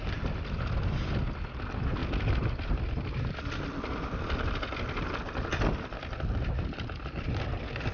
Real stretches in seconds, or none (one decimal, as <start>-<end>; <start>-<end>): 0.0-7.9